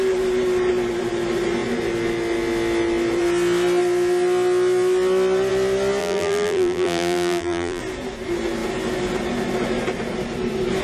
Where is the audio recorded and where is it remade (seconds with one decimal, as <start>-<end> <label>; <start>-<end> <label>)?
0.0-6.0 recorded; 6.0-7.8 remade; 7.8-10.8 recorded